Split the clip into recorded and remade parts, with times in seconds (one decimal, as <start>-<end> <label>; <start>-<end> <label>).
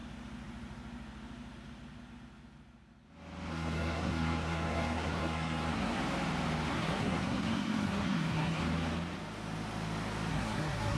0.0-3.5 recorded; 3.5-6.0 remade; 6.0-6.7 recorded; 6.7-8.6 remade; 8.6-10.3 recorded; 10.3-11.0 remade